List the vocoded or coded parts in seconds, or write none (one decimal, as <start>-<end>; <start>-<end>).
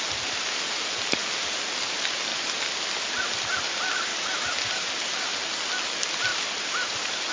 4.1-4.9; 6.3-7.3